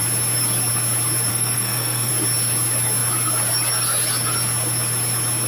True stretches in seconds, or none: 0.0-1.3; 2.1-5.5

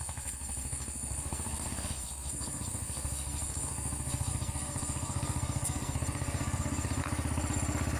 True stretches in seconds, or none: 7.0-8.0

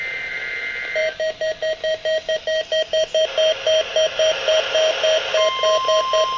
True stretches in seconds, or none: 0.0-6.4

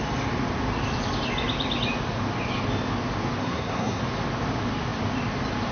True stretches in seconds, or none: 0.0-3.4; 4.0-5.7

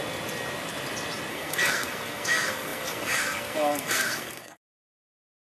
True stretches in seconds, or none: 0.0-1.3

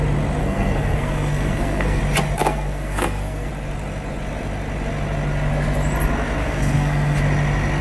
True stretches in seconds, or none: 0.0-0.4; 2.0-2.4; 3.5-6.4; 7.2-7.8

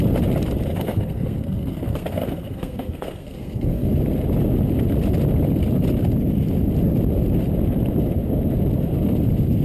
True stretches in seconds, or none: 0.0-0.7; 3.9-9.6

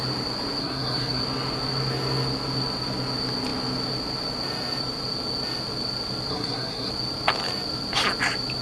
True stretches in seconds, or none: 0.0-0.6; 1.2-6.3; 6.9-8.6